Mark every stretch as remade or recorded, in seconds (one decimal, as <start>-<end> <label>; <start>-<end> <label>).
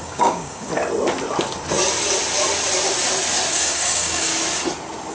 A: 0.0-0.7 remade; 0.7-3.5 recorded; 3.5-4.3 remade; 4.3-5.1 recorded